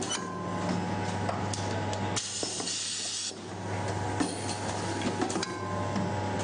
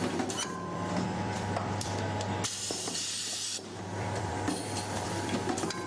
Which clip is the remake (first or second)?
second